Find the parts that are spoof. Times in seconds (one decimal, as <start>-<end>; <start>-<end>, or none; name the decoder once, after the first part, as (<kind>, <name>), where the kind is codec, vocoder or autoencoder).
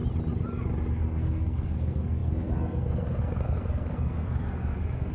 0.9-5.1 (codec, SNAC)